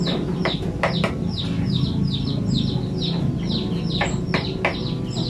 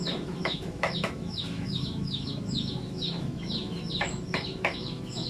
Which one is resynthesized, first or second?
second